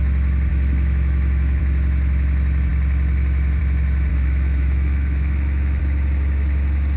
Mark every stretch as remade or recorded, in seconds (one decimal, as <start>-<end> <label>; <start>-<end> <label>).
0.0-0.5 recorded; 0.5-1.6 remade; 1.6-4.1 recorded; 4.1-5.8 remade; 5.8-7.0 recorded

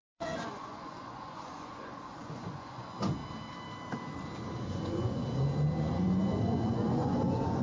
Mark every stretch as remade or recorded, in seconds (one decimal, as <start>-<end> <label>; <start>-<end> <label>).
0.0-3.2 remade; 3.2-4.6 recorded; 4.6-5.2 remade; 5.2-5.8 recorded; 5.8-7.6 remade

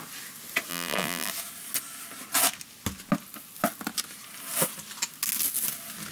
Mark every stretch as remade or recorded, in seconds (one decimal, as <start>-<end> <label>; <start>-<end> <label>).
0.0-0.7 recorded; 0.7-1.3 remade; 1.3-6.1 recorded

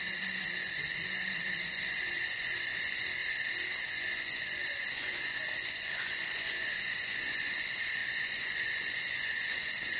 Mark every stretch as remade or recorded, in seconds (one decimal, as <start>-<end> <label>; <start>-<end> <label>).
0.0-3.2 remade; 3.2-3.9 recorded; 3.9-10.0 remade

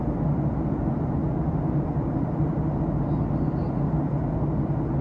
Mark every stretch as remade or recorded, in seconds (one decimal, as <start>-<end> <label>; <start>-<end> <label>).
0.0-5.0 recorded

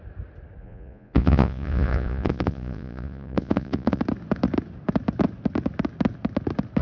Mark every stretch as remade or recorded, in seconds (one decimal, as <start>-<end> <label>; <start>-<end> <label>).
0.0-0.6 recorded; 0.6-4.0 remade; 4.0-6.8 recorded

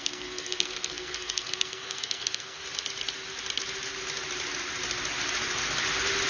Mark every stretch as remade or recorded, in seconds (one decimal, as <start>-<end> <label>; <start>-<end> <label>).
0.0-2.6 remade; 2.6-6.3 recorded